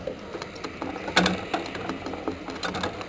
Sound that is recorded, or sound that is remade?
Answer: recorded